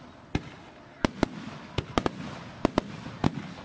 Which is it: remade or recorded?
recorded